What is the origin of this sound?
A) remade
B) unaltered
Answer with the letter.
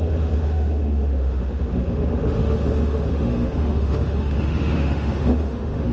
A